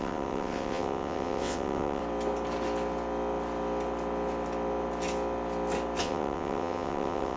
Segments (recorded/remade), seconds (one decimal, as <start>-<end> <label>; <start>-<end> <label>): 0.0-2.0 remade; 2.0-6.0 recorded; 6.0-7.4 remade